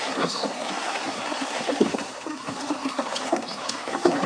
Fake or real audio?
fake